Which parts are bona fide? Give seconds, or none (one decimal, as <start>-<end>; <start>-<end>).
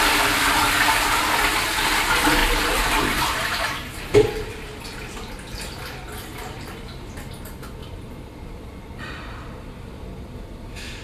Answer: 0.0-2.4; 5.3-6.3; 6.8-7.8; 10.6-11.0